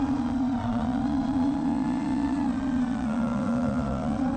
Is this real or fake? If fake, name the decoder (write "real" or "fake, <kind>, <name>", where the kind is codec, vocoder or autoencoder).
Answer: fake, vocoder, Vocos